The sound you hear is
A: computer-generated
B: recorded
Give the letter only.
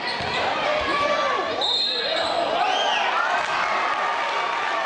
B